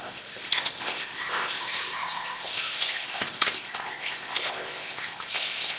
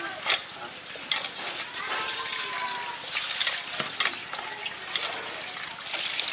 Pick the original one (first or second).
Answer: second